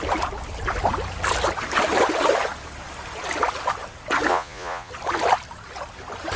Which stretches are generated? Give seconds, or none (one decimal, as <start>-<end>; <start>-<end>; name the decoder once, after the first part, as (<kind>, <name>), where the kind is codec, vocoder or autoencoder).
4.3-4.9 (vocoder, Vocos)